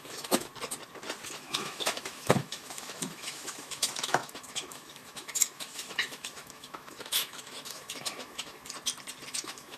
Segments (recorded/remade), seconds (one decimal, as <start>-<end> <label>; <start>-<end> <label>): 0.0-0.5 remade; 0.5-1.3 recorded; 1.3-8.6 remade; 8.6-9.3 recorded; 9.3-9.8 remade